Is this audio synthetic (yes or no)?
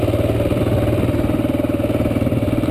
no